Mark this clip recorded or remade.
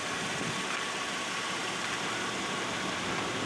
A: recorded